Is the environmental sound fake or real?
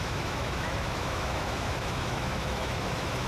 fake